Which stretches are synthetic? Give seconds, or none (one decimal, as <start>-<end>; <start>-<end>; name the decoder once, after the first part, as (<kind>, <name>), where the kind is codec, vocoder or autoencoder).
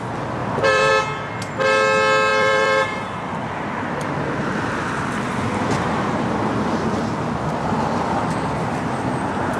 0.4-0.9 (vocoder, BigVGAN v2); 2.3-3.5